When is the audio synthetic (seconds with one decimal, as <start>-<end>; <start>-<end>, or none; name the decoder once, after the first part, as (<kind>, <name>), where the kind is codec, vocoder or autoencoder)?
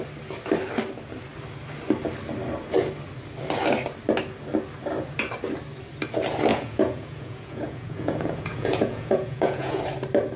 6.5-9.8 (vocoder, Vocos)